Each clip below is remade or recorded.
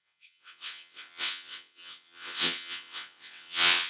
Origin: remade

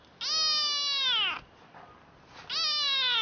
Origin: recorded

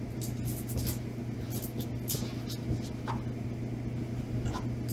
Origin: recorded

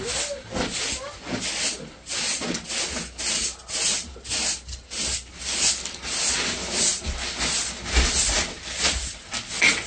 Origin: recorded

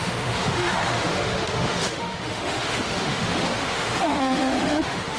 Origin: remade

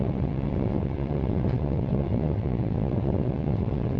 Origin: remade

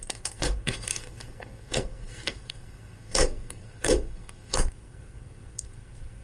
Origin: remade